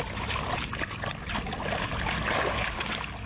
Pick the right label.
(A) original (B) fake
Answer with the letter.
A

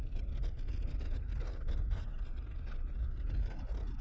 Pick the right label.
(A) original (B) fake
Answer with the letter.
A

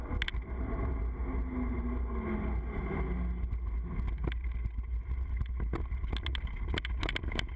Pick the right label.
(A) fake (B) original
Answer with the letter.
B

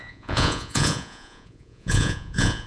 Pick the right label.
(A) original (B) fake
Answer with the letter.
B